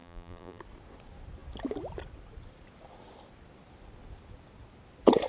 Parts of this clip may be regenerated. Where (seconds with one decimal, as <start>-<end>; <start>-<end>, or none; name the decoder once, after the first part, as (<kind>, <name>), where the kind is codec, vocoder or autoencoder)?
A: 0.0-0.6 (vocoder, BigVGAN v2)